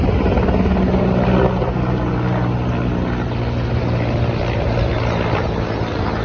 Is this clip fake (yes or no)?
no